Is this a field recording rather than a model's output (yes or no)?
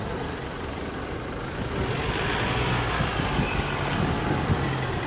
yes